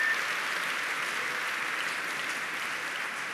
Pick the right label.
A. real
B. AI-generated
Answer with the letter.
A